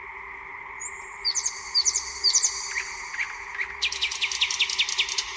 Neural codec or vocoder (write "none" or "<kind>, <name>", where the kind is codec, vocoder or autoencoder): none